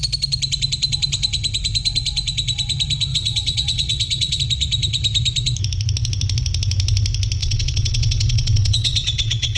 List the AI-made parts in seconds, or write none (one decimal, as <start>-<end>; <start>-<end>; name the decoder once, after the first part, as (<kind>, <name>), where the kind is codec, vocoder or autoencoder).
3.1-4.4 (vocoder, WaveNeXt); 7.4-9.6